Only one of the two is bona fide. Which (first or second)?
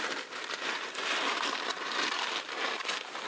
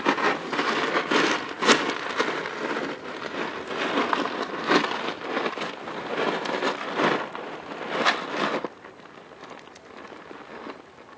second